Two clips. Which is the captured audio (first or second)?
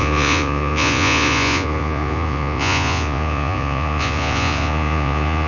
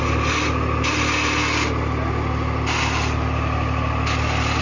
second